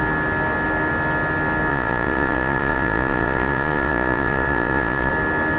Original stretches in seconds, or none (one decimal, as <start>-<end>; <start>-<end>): 0.0-1.7; 5.1-5.6